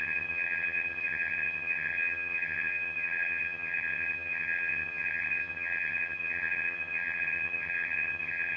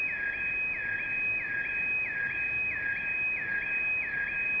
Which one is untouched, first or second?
second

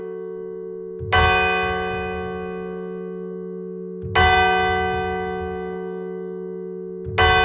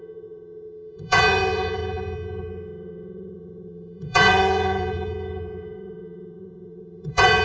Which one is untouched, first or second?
first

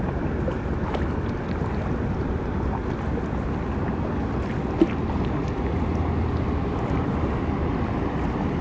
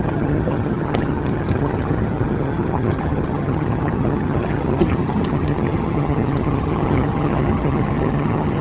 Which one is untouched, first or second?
first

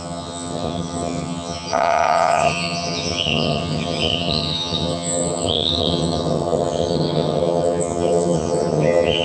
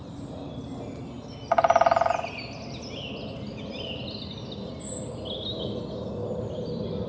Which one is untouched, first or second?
second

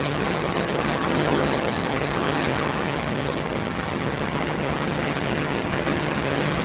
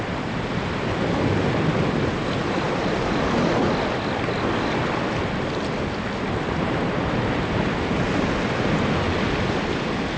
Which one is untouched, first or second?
second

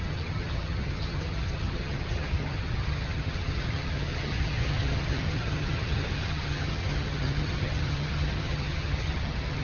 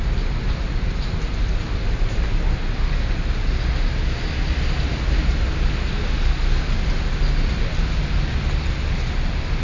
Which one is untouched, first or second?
second